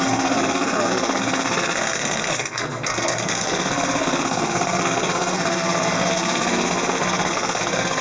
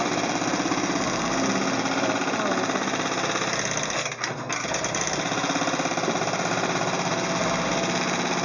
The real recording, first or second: second